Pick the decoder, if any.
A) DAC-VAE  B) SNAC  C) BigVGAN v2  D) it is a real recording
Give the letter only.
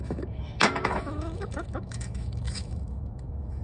A